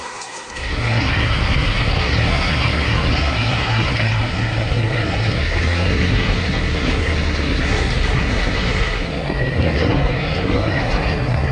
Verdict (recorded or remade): remade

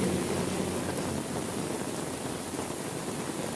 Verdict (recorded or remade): recorded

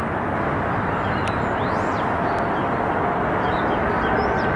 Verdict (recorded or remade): recorded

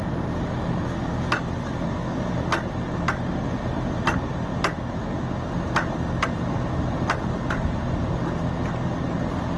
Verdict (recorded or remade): recorded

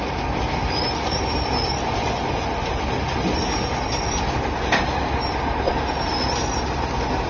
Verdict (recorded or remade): recorded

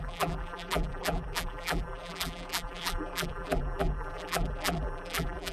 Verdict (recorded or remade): remade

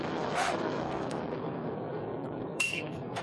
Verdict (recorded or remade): remade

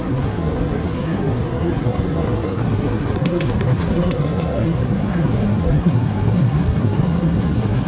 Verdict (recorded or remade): remade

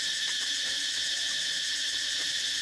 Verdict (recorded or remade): recorded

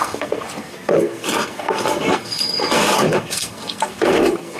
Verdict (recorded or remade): remade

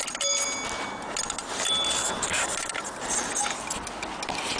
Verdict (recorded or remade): recorded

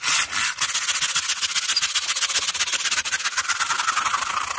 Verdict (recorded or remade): recorded